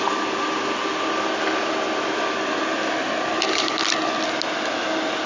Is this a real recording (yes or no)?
yes